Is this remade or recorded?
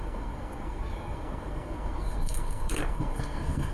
remade